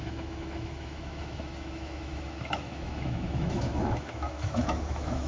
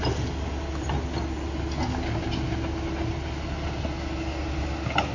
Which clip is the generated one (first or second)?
first